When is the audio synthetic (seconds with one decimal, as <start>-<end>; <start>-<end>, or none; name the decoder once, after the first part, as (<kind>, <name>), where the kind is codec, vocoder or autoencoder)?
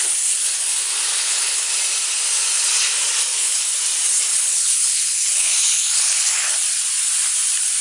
1.1-1.7 (codec, HILCodec); 3.3-3.8; 4.3-6.5